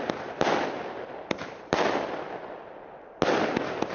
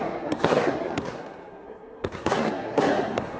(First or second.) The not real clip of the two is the second